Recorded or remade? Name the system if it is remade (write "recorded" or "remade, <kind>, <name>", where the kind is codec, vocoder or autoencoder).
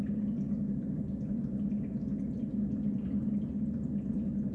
recorded